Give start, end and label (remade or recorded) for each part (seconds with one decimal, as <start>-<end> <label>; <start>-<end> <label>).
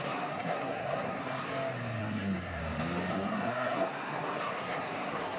0.0-1.5 remade; 1.5-2.0 recorded; 2.0-2.6 remade; 2.6-3.1 recorded; 3.1-5.4 remade